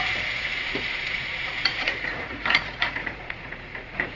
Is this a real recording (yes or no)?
no